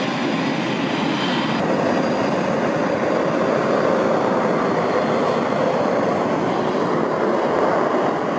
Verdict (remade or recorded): recorded